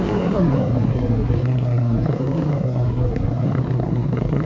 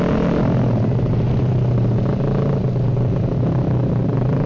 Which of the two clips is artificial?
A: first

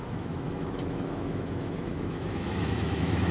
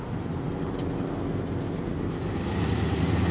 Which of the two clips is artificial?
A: first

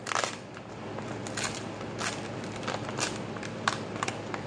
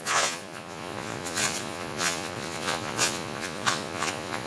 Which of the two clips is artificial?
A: second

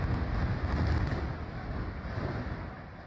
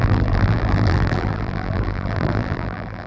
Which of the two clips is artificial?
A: second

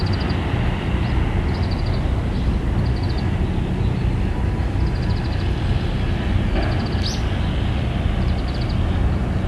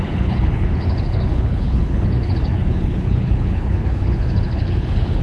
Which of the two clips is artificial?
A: second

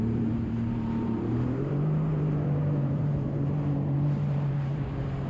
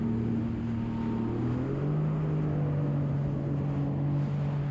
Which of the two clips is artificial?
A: first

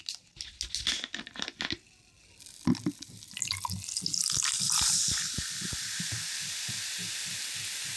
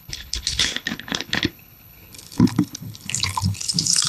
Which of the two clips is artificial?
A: second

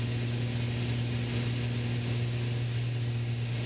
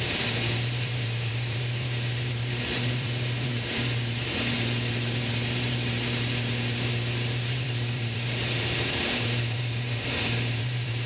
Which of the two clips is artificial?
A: second